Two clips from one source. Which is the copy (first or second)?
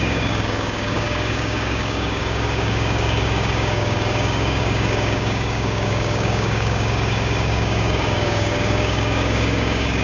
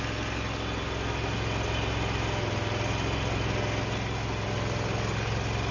first